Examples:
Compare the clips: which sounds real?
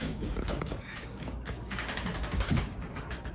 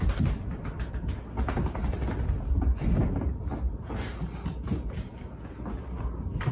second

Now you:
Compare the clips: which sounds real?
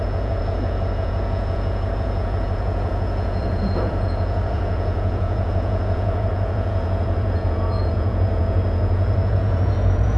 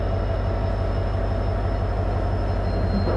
second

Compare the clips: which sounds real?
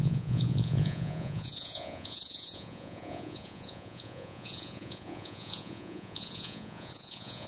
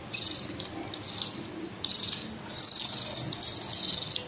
second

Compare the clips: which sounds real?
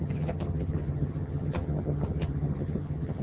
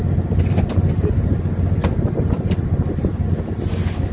second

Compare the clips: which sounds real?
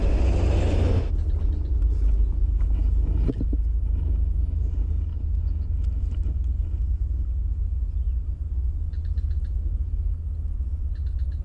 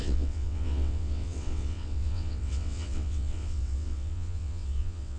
first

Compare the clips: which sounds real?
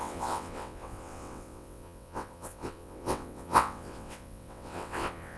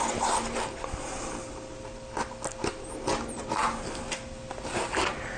second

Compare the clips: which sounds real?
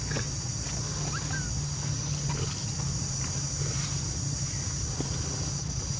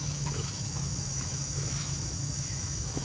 first